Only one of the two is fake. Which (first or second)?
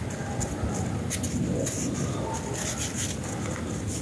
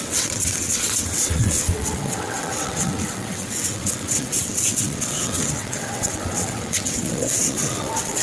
second